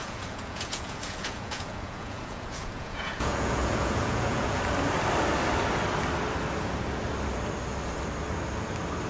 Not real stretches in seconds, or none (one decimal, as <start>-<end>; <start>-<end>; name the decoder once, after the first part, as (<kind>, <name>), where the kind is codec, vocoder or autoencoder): 0.0-4.6 (vocoder, Vocos)